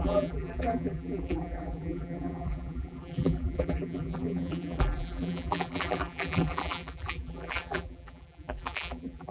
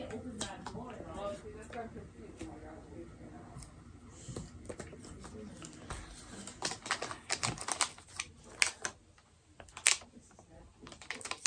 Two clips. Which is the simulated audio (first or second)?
first